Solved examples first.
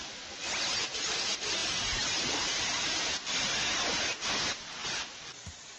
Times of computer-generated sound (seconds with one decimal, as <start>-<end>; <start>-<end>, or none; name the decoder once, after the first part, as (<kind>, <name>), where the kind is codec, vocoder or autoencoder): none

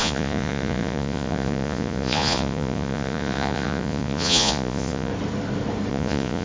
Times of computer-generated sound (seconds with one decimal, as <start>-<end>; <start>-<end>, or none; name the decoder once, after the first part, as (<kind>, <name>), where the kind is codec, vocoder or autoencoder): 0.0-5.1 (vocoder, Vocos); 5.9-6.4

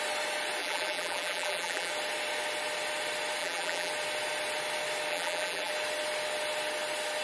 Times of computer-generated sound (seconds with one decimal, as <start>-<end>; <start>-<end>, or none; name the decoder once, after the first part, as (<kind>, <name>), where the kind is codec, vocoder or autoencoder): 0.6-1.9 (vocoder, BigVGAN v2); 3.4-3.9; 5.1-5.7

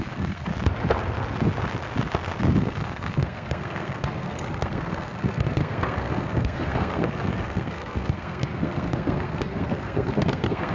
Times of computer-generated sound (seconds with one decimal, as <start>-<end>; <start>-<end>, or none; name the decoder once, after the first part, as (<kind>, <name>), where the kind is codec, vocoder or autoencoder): 0.0-0.5 (codec, SNAC); 2.6-10.7

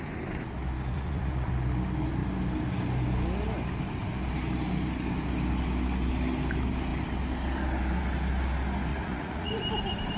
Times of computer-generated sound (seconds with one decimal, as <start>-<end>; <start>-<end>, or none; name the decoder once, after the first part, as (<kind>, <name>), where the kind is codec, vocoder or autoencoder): 0.9-1.5 (vocoder, Vocos); 8.9-9.5

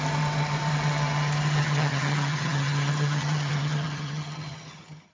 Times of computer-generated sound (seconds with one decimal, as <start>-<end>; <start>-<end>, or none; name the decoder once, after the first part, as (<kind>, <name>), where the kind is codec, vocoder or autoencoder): 1.6-5.1 (vocoder, HiFi-GAN)